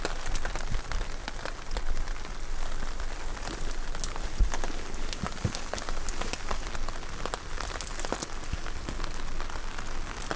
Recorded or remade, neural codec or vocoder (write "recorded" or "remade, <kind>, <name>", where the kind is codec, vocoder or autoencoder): recorded